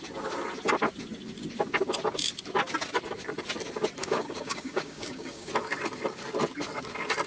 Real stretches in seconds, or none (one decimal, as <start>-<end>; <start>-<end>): 0.0-4.0; 5.5-7.3